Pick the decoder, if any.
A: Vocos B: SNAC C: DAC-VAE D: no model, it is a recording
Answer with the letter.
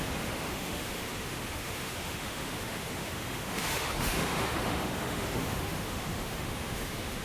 C